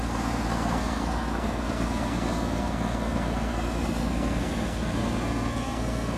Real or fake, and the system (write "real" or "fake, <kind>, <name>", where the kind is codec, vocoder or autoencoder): fake, codec, SNAC